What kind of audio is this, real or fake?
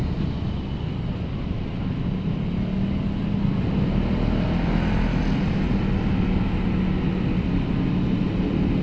real